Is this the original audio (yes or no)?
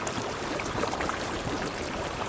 no